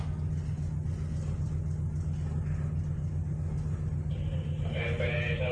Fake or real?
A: real